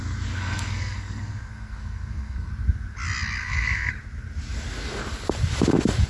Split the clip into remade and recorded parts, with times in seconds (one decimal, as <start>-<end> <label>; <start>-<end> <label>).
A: 0.0-0.4 recorded; 0.4-2.5 remade; 2.5-3.4 recorded; 3.4-3.9 remade; 3.9-6.1 recorded

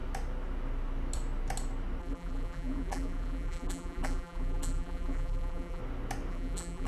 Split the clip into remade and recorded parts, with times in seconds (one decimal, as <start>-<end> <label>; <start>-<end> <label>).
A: 0.0-2.0 recorded; 2.0-5.8 remade; 5.8-6.3 recorded; 6.3-6.9 remade

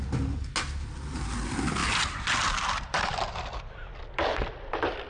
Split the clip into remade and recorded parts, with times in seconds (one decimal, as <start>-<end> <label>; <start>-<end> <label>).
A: 0.0-1.8 recorded; 1.8-5.1 remade

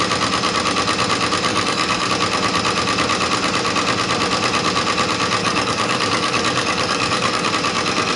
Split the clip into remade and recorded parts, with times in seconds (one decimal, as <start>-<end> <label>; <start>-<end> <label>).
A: 0.0-1.5 recorded; 1.5-2.1 remade; 2.1-5.4 recorded; 5.4-7.5 remade; 7.5-8.2 recorded

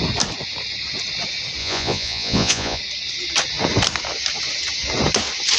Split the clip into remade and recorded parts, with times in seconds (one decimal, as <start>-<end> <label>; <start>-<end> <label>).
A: 0.0-1.6 recorded; 1.6-2.8 remade; 2.8-5.6 recorded

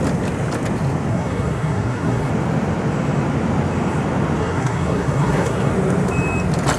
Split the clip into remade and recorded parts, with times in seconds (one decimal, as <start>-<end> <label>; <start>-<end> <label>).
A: 0.0-1.1 recorded; 1.1-2.3 remade; 2.3-4.4 recorded; 4.4-5.7 remade; 5.7-6.8 recorded